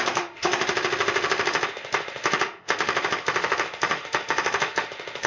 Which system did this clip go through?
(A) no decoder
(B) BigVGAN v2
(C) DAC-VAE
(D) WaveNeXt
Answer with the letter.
C